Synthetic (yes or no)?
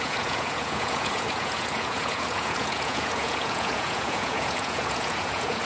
yes